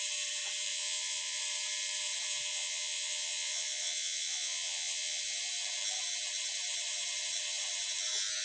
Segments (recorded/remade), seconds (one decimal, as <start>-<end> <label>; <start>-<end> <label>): 0.0-0.7 recorded; 0.7-1.4 remade; 1.4-2.5 recorded; 2.5-5.2 remade; 5.2-8.4 recorded

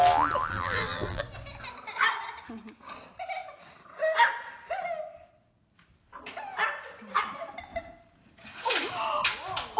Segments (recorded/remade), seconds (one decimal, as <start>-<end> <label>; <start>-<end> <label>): 0.0-0.5 recorded; 0.5-1.2 remade; 1.2-9.8 recorded